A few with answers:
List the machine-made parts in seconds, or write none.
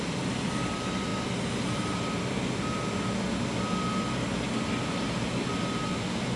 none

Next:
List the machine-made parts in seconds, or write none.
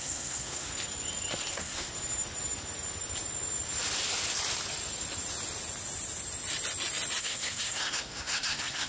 0.0-0.7 (codec, SNAC); 1.5-1.9; 7.2-8.9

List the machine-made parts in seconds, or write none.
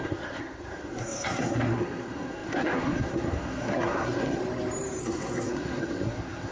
0.0-4.4 (codec, SNAC); 5.0-6.5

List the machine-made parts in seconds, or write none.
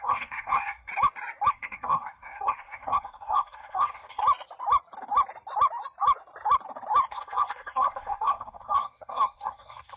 0.0-0.9 (codec, SNAC); 1.5-4.2; 7.1-10.0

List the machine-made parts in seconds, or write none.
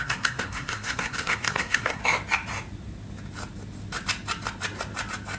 0.0-2.0 (codec, SNAC)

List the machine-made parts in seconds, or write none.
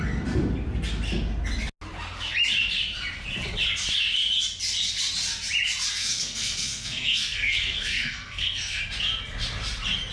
5.9-8.8 (codec, SNAC)